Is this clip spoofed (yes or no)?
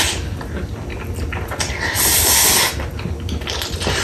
no